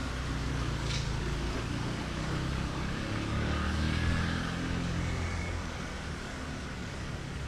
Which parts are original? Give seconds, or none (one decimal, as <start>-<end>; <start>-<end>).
0.0-0.5